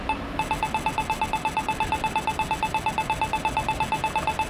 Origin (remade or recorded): recorded